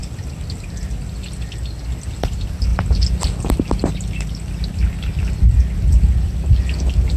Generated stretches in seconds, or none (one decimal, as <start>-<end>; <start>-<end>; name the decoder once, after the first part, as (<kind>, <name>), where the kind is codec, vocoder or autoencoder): none

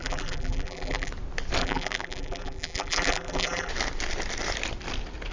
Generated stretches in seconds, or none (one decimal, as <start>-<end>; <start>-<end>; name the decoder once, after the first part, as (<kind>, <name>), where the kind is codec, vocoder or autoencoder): 0.0-1.1 (vocoder, BigVGAN v2); 1.6-3.7

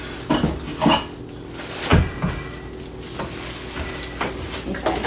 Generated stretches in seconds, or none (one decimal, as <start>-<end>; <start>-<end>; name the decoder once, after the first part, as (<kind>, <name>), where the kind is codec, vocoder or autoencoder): none

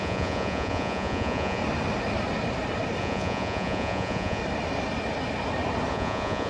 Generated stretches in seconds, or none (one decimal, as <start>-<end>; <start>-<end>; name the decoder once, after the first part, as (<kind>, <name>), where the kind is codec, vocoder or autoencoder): 0.0-1.6 (vocoder, Vocos); 3.0-4.4; 5.9-6.5